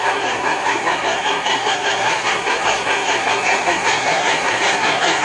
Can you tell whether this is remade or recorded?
remade